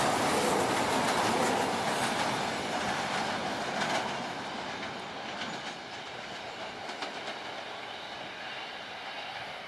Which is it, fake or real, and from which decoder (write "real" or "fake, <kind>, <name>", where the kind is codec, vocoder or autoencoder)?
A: real